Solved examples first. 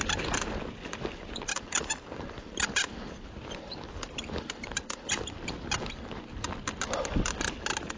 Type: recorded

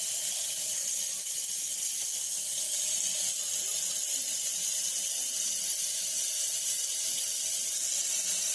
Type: recorded